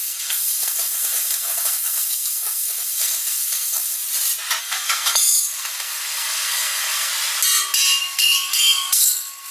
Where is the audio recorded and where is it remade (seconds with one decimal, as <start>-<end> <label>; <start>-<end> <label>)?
0.0-4.0 remade; 4.0-4.6 recorded; 4.6-7.1 remade; 7.1-8.0 recorded; 8.0-9.5 remade

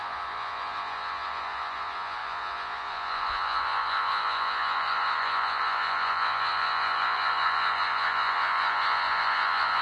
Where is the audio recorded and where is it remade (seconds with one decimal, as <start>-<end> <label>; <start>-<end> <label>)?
0.0-9.8 remade